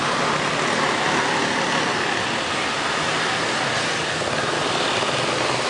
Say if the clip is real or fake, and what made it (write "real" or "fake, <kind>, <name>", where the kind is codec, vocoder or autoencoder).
real